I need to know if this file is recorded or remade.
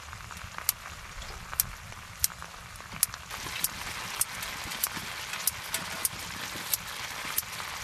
recorded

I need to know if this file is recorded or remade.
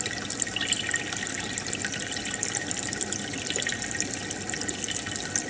recorded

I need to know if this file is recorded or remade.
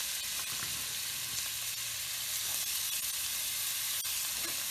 recorded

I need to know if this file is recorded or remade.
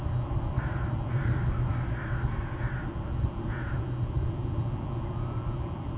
recorded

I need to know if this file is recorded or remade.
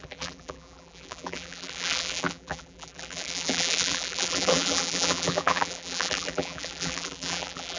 remade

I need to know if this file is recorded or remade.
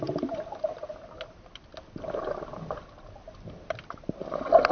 recorded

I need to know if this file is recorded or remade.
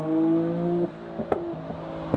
recorded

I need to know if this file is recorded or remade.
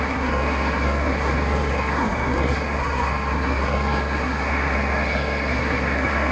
remade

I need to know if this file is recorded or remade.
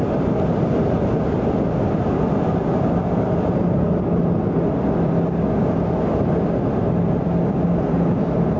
recorded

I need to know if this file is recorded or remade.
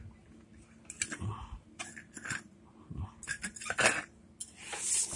recorded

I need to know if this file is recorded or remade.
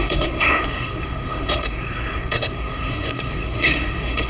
remade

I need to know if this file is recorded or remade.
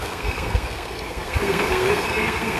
remade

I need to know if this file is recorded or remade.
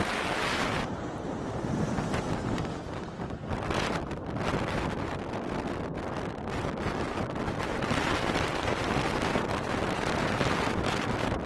recorded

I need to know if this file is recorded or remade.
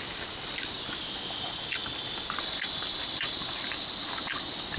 recorded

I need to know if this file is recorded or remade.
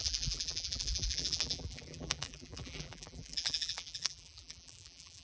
remade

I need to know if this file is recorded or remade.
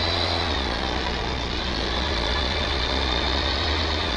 remade